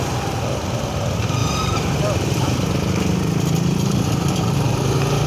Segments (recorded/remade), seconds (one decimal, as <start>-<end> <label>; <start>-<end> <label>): 0.0-1.4 recorded; 1.4-4.6 remade; 4.6-5.3 recorded

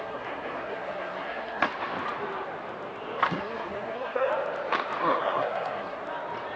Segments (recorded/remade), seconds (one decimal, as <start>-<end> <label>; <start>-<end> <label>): 0.0-1.7 remade; 1.7-3.2 recorded; 3.2-4.3 remade; 4.3-5.0 recorded; 5.0-6.0 remade; 6.0-6.6 recorded

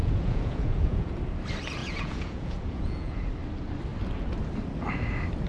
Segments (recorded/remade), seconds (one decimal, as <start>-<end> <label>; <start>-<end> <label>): 0.0-1.2 remade; 1.2-1.8 recorded; 1.8-3.3 remade; 3.3-5.5 recorded

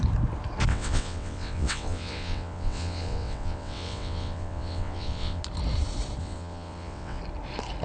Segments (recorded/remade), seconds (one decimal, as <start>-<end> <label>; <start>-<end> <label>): 0.0-0.7 recorded; 0.7-5.4 remade; 5.4-6.2 recorded; 6.2-7.2 remade; 7.2-7.8 recorded

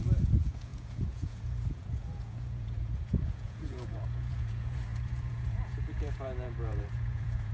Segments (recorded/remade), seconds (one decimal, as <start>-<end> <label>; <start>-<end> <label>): 0.0-7.5 remade

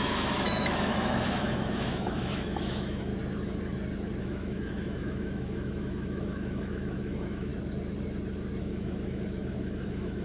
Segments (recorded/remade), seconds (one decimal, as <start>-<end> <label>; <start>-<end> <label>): 0.0-3.1 remade; 3.1-4.2 recorded; 4.2-7.5 remade; 7.5-8.6 recorded; 8.6-10.2 remade